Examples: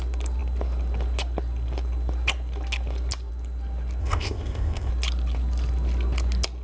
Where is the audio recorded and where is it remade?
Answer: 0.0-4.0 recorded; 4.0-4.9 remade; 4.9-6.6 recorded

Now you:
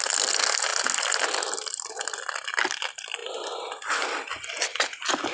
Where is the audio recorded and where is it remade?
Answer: 0.0-5.3 recorded

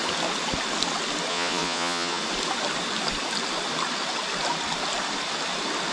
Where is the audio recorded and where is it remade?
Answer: 0.0-1.3 recorded; 1.3-2.2 remade; 2.2-5.9 recorded

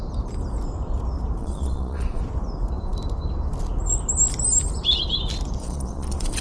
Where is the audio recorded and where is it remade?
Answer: 0.0-1.4 recorded; 1.4-2.2 remade; 2.2-5.6 recorded; 5.6-6.4 remade

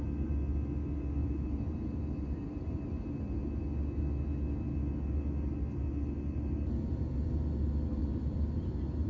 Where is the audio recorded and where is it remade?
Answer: 0.0-1.2 recorded; 1.2-3.5 remade; 3.5-6.9 recorded; 6.9-7.6 remade; 7.6-8.0 recorded; 8.0-9.1 remade

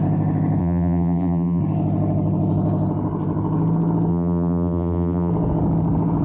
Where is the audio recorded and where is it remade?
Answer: 0.0-0.6 recorded; 0.6-1.6 remade; 1.6-4.1 recorded; 4.1-5.3 remade; 5.3-6.2 recorded